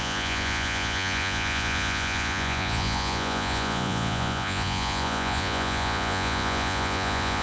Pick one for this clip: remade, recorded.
remade